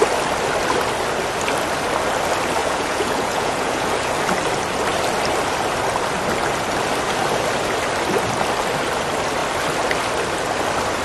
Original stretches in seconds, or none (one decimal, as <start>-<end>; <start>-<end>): 0.0-2.6; 4.1-11.0